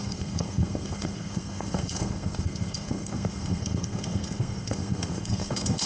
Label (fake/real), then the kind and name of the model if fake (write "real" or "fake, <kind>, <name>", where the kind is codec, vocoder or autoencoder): fake, codec, SNAC